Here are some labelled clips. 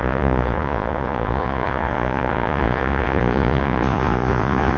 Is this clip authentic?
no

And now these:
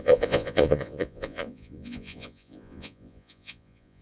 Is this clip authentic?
no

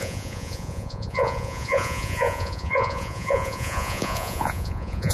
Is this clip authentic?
no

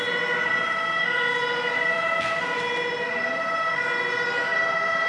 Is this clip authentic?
yes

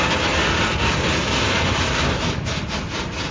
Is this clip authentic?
yes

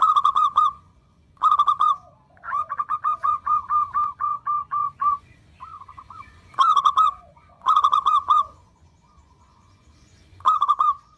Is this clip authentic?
no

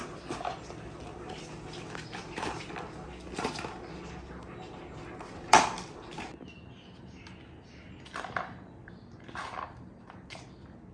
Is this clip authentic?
yes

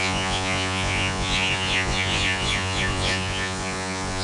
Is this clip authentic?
no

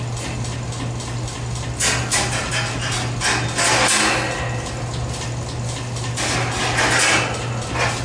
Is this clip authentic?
yes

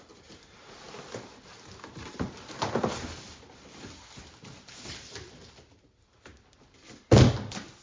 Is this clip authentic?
yes